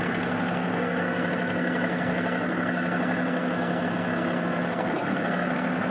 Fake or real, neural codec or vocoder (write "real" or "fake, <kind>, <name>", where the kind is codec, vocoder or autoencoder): fake, codec, SNAC